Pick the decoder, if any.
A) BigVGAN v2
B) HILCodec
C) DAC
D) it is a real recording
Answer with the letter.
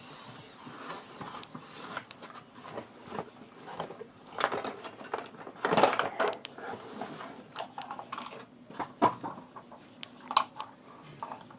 D